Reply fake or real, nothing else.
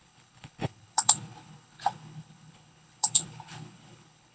fake